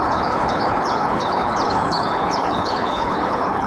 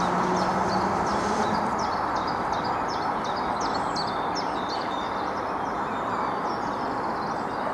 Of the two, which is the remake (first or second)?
first